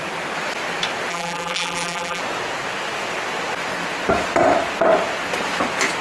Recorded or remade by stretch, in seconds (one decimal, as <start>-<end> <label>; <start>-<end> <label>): 0.0-1.1 recorded; 1.1-2.2 remade; 2.2-6.0 recorded